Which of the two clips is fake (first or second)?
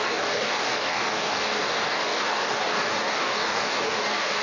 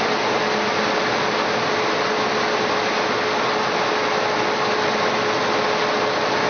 first